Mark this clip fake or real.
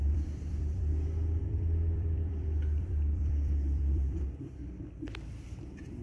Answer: fake